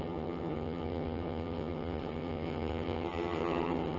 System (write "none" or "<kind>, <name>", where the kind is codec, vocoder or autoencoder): vocoder, HiFi-GAN